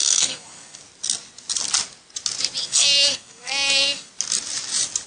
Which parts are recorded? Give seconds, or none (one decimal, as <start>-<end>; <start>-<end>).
0.8-2.6; 4.1-5.1